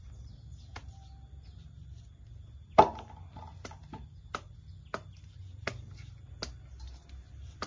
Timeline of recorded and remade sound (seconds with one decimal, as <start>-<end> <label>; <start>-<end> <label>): 0.0-5.4 recorded; 5.4-6.3 remade; 6.3-7.7 recorded